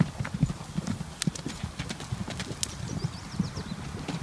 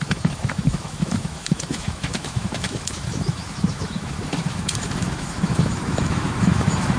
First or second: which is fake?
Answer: second